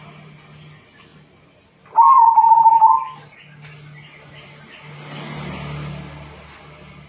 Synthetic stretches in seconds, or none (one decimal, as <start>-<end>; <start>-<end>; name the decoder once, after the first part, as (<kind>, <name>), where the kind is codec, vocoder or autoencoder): none